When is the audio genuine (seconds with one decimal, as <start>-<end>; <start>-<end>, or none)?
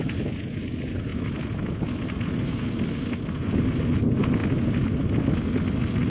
0.0-6.1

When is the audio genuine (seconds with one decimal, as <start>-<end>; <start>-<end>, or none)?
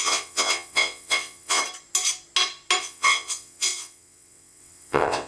1.6-2.8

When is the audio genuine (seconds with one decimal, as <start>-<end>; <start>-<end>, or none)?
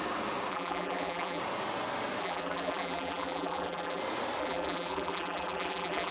0.0-0.5; 1.4-2.2; 4.0-4.4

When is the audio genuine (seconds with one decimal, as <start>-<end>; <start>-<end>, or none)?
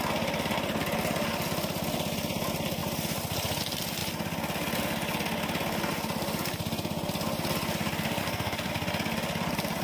0.0-8.2; 8.7-9.8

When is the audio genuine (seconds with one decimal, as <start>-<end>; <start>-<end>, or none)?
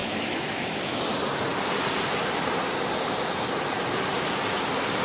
1.0-5.0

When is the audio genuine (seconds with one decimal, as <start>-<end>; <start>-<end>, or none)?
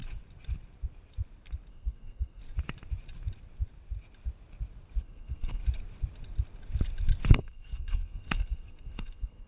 0.0-1.7; 2.4-5.0; 5.6-7.3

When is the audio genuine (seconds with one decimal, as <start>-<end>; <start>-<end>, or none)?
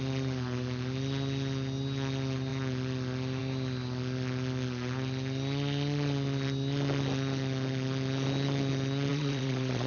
0.0-9.1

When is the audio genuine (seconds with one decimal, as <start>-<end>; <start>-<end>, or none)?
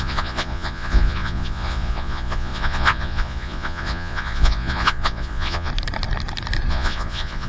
5.7-6.7